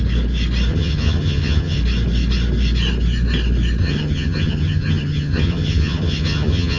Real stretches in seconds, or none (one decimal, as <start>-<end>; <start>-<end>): 0.0-0.7; 1.8-3.8